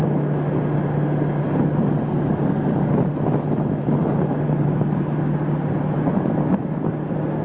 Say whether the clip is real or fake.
real